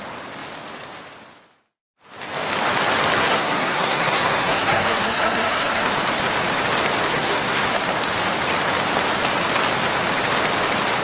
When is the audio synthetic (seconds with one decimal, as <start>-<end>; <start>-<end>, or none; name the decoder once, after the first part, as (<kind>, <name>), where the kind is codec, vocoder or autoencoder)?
3.2-5.9 (codec, SNAC); 7.1-7.8